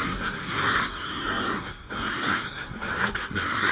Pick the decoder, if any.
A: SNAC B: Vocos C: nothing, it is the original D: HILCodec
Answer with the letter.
A